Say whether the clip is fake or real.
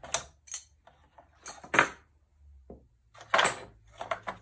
real